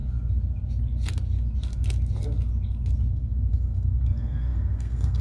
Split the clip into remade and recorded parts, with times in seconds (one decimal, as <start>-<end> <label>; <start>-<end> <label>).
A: 0.0-3.1 recorded; 3.1-5.2 remade